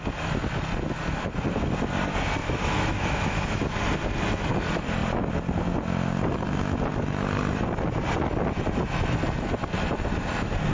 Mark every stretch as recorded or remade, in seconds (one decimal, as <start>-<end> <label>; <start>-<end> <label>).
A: 0.0-2.4 recorded; 2.4-3.6 remade; 3.6-10.7 recorded